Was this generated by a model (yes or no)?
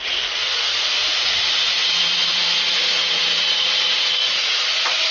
yes